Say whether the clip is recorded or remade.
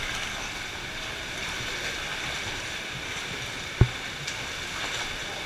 recorded